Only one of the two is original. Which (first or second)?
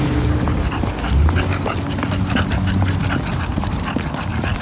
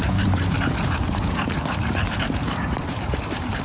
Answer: first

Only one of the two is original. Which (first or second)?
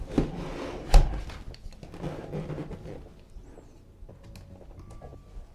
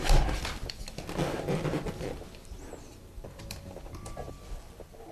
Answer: first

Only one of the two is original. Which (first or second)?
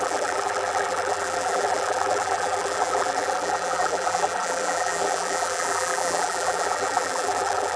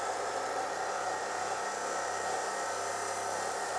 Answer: second